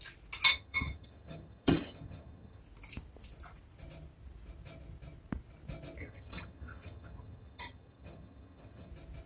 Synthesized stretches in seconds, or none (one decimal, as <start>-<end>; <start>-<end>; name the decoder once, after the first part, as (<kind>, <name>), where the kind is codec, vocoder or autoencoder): 0.5-2.6 (vocoder, HiFi-GAN); 6.0-8.9